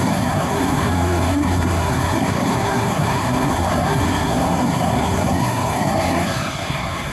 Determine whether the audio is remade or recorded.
remade